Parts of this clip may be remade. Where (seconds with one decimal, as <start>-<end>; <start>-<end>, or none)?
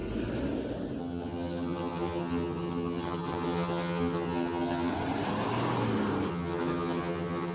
1.0-4.9; 6.3-7.5